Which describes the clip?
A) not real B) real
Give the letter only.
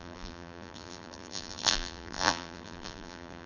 A